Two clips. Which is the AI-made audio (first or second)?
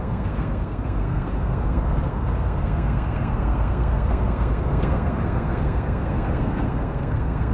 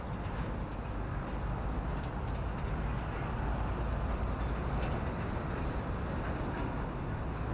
first